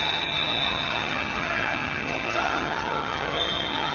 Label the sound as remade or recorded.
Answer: remade